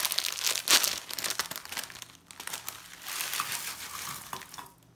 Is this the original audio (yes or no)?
yes